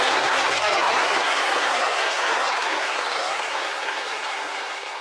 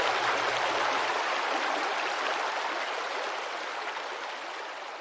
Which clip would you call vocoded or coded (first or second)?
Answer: first